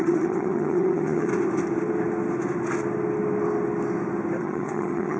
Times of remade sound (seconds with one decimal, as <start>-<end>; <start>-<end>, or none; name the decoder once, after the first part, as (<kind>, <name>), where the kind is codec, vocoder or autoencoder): 0.0-1.3 (vocoder, HiFi-GAN); 4.4-5.2